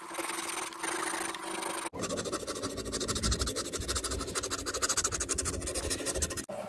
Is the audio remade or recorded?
recorded